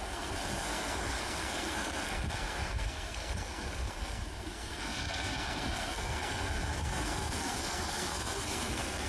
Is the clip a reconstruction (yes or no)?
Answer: yes